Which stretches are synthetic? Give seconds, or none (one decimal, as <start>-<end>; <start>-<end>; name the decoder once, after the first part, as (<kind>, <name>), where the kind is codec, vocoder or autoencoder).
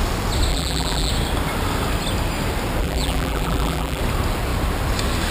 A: 0.5-1.1 (vocoder, BigVGAN v2); 2.8-4.0